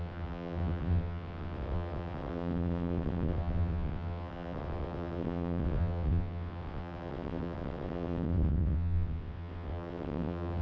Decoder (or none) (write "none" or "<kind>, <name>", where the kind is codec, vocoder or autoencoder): vocoder, WaveNeXt